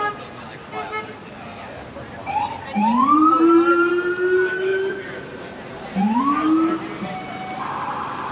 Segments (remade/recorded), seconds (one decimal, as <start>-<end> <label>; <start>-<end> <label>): 0.0-1.5 recorded; 1.5-3.9 remade; 3.9-4.7 recorded; 4.7-6.2 remade; 6.2-8.3 recorded